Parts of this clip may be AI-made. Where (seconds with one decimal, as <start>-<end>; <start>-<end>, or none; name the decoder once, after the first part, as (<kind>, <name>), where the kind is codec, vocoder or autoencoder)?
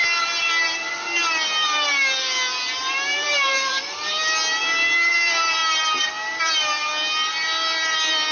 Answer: 0.0-4.2 (vocoder, BigVGAN v2); 5.1-5.6; 6.4-8.3